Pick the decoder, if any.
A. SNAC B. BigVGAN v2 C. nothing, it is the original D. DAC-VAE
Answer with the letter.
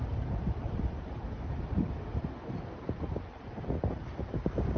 B